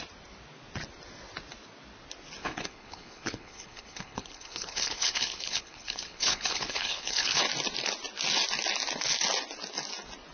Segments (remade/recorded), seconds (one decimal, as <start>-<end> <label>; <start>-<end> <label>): 0.0-2.4 recorded; 2.4-7.4 remade; 7.4-10.3 recorded